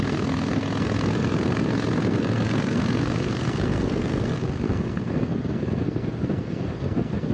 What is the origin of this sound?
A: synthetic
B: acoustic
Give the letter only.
A